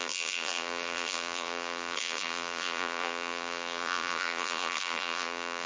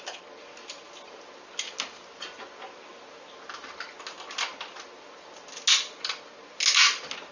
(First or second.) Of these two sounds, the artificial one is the first